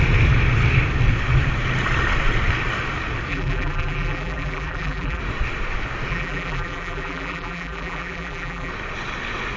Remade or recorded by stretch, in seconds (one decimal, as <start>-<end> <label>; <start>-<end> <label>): 0.0-3.3 recorded; 3.3-5.2 remade; 5.2-6.1 recorded; 6.1-8.7 remade; 8.7-9.6 recorded